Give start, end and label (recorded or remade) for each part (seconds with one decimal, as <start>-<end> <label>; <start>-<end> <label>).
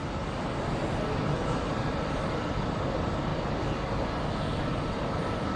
0.0-1.9 recorded; 1.9-3.3 remade; 3.3-4.6 recorded; 4.6-5.6 remade